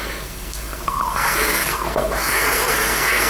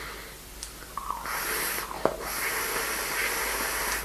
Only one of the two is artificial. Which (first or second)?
first